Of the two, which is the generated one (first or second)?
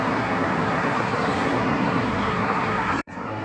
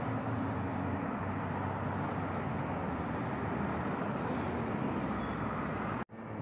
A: first